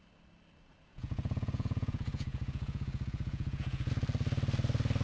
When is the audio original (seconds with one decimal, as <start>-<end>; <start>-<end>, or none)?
0.0-0.9; 3.9-5.0